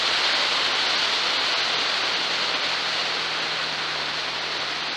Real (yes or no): yes